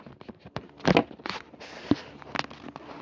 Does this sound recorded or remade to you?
recorded